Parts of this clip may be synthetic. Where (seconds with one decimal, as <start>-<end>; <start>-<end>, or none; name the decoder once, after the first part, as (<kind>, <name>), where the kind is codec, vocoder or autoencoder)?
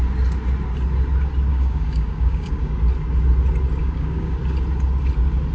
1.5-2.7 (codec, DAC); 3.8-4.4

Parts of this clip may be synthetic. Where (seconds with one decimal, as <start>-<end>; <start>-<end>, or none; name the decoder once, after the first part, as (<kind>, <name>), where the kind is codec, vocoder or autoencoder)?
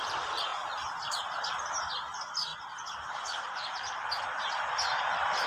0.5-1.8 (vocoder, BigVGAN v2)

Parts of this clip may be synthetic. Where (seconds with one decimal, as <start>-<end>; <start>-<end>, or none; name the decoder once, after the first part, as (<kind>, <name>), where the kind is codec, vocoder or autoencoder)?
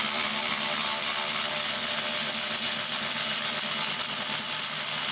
none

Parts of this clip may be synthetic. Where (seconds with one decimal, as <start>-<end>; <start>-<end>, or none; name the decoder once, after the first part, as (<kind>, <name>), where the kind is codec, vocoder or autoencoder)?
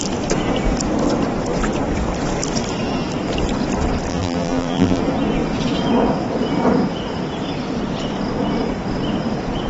4.1-5.0 (vocoder, BigVGAN v2)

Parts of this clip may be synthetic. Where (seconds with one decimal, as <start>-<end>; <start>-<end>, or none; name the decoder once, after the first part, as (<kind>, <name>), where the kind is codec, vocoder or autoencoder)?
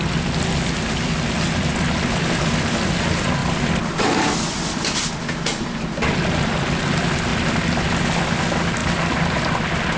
3.4-5.1 (vocoder, BigVGAN v2); 8.8-10.0